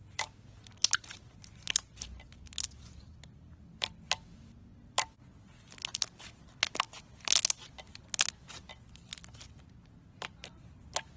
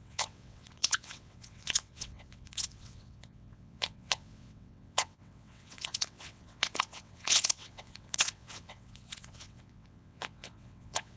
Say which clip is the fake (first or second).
second